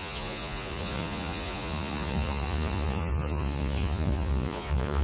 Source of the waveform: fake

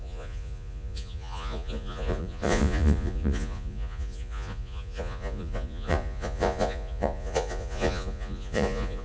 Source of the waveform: fake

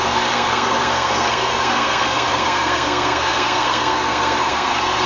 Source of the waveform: fake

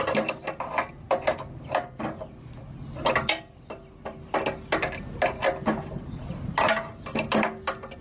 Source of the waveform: real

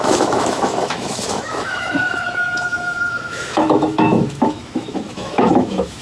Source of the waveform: fake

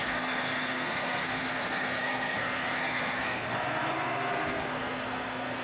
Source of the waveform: fake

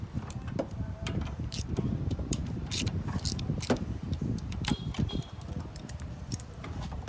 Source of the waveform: fake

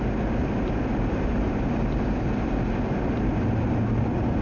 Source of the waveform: real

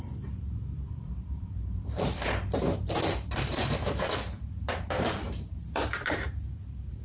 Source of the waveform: fake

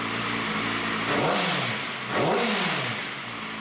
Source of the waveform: real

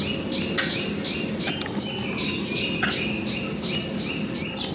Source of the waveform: real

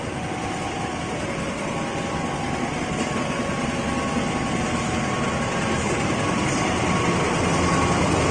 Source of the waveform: real